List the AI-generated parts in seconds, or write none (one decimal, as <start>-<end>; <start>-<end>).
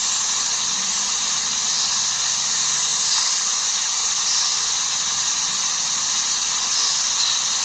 none